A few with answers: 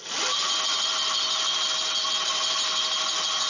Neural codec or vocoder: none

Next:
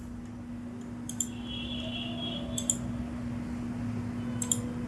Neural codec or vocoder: none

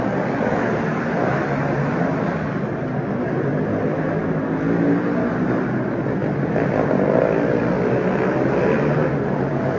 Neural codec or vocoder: none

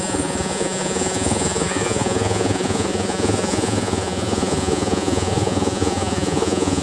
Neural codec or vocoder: vocoder, Vocos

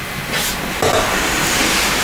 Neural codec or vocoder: none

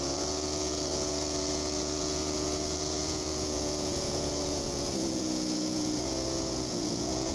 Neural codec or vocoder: vocoder, Vocos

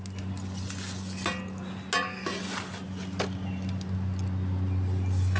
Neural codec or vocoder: none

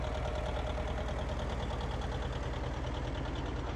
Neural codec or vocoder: none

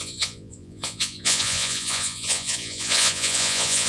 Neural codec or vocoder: vocoder, Vocos